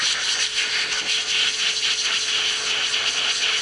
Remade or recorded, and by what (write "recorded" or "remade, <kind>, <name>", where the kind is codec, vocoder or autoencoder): recorded